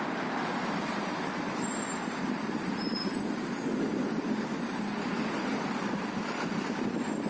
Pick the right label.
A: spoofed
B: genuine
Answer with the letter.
A